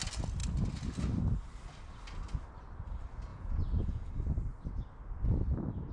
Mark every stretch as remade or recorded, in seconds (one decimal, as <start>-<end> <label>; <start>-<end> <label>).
0.0-3.3 recorded; 3.3-4.1 remade; 4.1-5.9 recorded